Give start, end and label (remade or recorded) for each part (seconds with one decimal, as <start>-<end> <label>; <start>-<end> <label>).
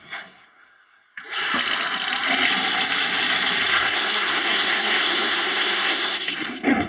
0.0-1.1 remade; 1.1-3.7 recorded; 3.7-6.9 remade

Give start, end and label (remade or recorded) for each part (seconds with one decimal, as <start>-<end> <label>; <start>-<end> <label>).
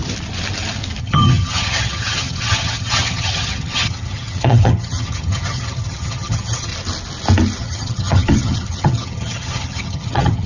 0.0-1.0 recorded; 1.0-6.7 remade; 6.7-7.6 recorded; 7.6-10.5 remade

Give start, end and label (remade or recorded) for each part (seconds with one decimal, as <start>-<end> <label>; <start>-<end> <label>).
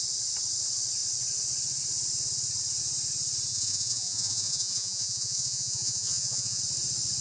0.0-3.5 recorded; 3.5-6.6 remade; 6.6-7.2 recorded